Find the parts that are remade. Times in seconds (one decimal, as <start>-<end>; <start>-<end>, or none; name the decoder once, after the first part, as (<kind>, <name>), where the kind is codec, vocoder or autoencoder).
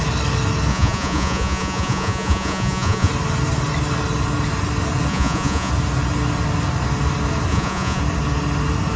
0.7-3.1 (vocoder, Vocos); 5.1-5.7; 7.5-8.0